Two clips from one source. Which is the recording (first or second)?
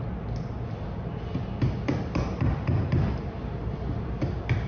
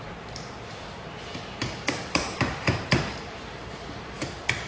first